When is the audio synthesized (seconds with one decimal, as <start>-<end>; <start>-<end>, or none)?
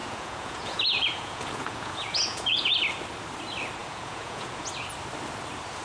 0.0-2.7; 3.8-4.7